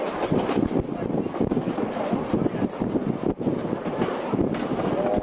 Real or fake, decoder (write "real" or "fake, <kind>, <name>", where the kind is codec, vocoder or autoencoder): real